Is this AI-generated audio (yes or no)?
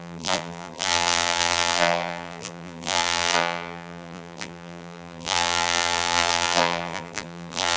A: yes